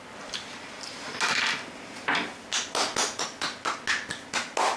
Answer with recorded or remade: recorded